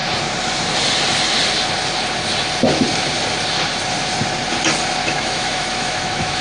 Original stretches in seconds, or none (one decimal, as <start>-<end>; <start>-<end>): 0.0-5.0